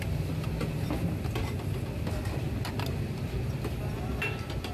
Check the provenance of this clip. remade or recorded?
recorded